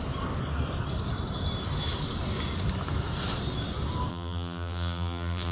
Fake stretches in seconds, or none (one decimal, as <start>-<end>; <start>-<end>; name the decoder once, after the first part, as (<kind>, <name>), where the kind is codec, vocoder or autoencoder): 4.1-5.5 (vocoder, BigVGAN v2)